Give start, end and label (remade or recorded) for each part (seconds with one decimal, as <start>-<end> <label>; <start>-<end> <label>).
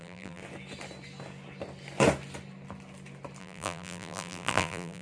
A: 0.0-0.4 remade; 0.4-3.4 recorded; 3.4-5.0 remade